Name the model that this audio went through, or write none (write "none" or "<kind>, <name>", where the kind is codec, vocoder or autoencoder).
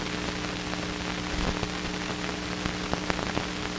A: none